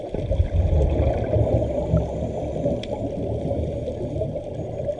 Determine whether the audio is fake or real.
real